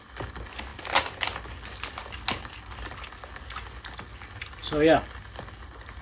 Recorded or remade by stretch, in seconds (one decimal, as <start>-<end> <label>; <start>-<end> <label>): 0.0-6.0 recorded